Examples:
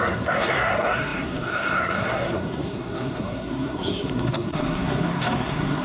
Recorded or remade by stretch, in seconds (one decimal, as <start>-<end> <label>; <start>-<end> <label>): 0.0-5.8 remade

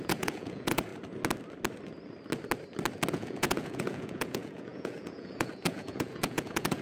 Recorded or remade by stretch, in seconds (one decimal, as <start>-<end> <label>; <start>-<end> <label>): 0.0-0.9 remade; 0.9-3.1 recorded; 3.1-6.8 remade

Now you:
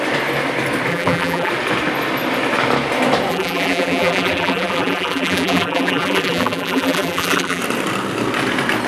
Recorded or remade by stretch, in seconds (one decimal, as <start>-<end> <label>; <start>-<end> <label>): 0.0-0.9 recorded; 0.9-1.5 remade; 1.5-3.3 recorded; 3.3-7.6 remade; 7.6-8.9 recorded